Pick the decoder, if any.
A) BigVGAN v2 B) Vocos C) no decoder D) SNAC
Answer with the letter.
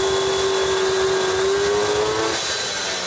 C